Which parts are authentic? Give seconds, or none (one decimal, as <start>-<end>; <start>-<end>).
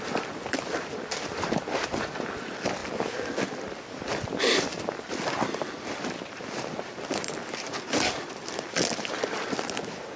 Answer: 0.0-10.2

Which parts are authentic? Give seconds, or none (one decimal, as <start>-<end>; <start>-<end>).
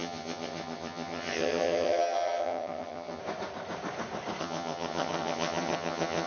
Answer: 3.2-4.4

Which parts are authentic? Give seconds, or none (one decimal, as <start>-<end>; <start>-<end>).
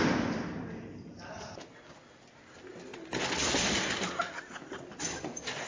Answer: 0.0-5.7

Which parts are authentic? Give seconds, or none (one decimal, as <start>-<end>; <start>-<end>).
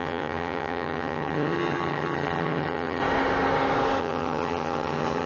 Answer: 3.0-4.0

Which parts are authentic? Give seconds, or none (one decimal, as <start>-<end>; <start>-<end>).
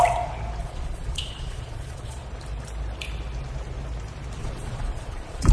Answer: 0.0-0.6; 2.3-4.4